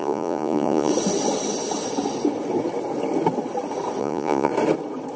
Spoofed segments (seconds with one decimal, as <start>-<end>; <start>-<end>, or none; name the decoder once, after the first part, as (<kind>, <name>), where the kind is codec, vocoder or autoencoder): 0.0-0.9 (vocoder, Vocos); 4.0-4.5